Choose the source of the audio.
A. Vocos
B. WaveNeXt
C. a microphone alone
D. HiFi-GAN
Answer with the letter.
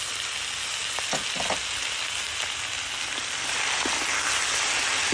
C